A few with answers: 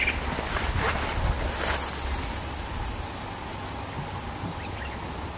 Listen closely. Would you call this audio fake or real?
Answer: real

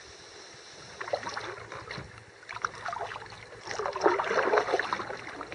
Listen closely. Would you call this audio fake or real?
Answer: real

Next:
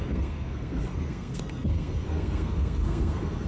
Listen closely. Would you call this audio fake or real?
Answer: fake